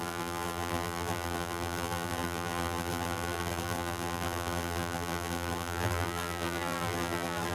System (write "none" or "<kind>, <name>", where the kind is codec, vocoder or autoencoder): vocoder, BigVGAN v2